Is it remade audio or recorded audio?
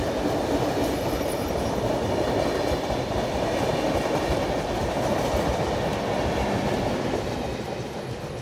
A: recorded